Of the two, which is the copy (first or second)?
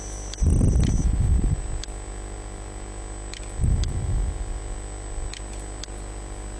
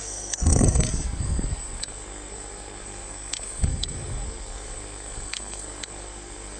second